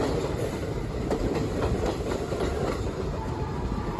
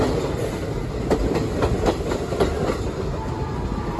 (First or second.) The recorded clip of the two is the second